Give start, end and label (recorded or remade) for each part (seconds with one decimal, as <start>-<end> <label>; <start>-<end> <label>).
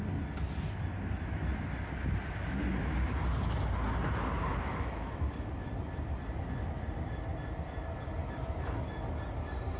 0.0-4.5 recorded; 4.5-5.7 remade; 5.7-8.2 recorded; 8.2-9.2 remade; 9.2-9.8 recorded